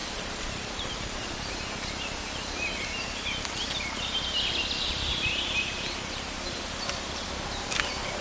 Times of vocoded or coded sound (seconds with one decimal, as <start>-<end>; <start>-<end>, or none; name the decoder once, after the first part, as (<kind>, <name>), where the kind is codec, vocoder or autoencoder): 0.0-1.3 (vocoder, BigVGAN v2)